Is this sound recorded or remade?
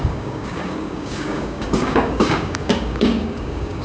remade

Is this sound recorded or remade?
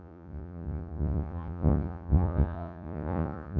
remade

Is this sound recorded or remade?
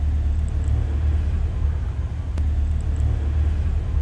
recorded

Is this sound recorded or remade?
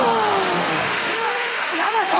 remade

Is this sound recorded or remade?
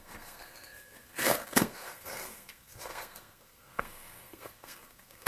remade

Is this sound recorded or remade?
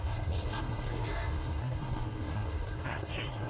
remade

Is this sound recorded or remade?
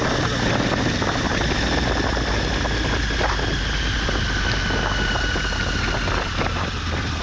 recorded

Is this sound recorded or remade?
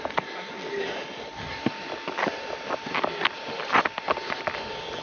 recorded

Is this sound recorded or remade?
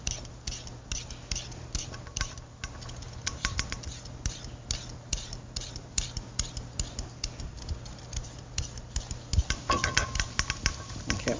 recorded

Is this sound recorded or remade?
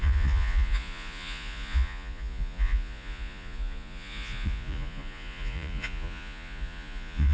remade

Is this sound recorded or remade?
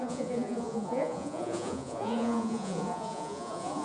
remade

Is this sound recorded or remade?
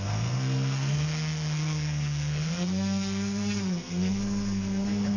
remade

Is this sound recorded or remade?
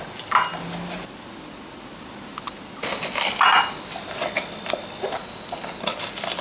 recorded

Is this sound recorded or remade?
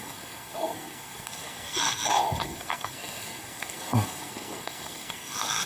remade